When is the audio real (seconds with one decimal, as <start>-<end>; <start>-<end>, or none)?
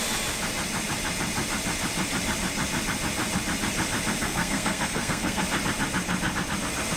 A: 0.0-4.2; 5.4-7.0